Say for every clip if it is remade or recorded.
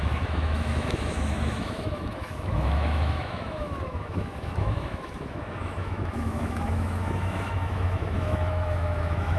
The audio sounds remade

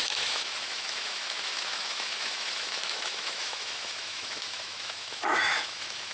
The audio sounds remade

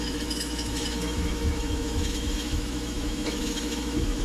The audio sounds remade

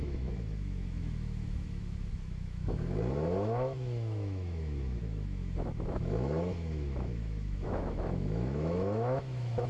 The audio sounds remade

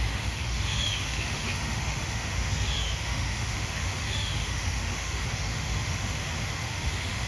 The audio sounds remade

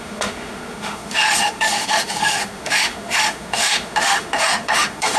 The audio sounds remade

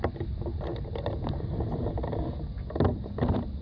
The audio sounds recorded